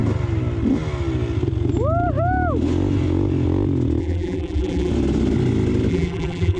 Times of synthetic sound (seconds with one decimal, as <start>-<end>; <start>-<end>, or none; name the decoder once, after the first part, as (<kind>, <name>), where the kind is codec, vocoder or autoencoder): 4.0-4.9 (vocoder, BigVGAN v2); 5.9-6.6